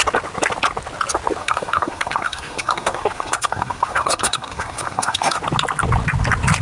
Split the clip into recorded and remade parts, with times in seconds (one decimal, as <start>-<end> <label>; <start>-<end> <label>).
0.0-1.4 recorded; 1.4-5.4 remade; 5.4-6.6 recorded